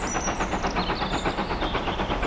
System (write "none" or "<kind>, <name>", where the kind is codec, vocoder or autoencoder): vocoder, BigVGAN v2